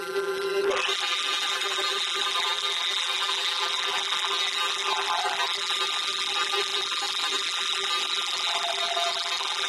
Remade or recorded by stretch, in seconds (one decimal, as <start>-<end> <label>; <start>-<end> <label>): 0.0-9.7 remade